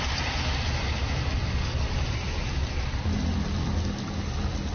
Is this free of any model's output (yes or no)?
yes